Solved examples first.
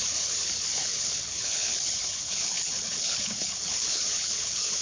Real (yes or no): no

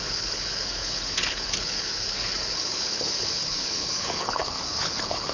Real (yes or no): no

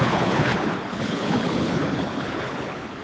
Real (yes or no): no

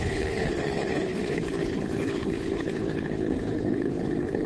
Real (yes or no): no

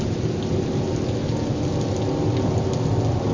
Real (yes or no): yes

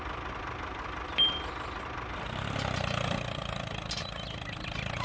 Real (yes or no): yes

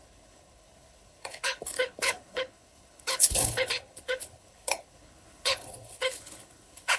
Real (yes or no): no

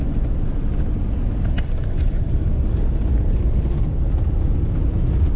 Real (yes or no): yes